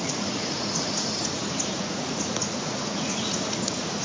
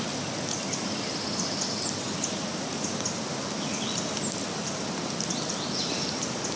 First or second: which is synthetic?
first